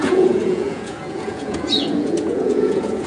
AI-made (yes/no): yes